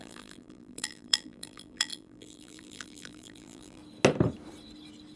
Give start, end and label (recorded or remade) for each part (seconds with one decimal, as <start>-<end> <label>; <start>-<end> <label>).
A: 0.0-3.8 remade; 3.8-5.2 recorded